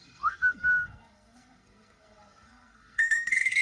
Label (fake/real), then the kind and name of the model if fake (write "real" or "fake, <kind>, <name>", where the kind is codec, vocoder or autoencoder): fake, codec, SNAC